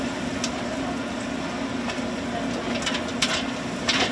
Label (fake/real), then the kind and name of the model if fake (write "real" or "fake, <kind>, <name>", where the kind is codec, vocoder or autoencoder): real